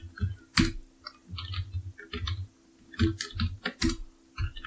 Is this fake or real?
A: real